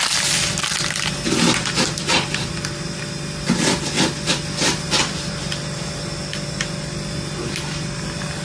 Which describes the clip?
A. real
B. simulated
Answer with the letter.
A